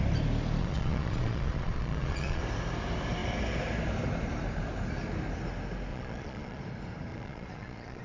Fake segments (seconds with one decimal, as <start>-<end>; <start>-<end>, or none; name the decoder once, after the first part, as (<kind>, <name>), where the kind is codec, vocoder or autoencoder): 0.6-2.4 (vocoder, Vocos); 5.9-6.6; 7.1-8.0